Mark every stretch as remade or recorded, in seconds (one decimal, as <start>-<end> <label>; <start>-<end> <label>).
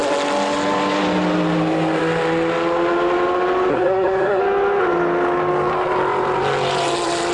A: 0.0-3.7 recorded; 3.7-4.4 remade; 4.4-7.3 recorded